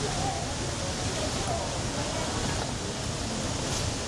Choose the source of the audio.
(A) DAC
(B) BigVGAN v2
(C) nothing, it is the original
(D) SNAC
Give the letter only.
C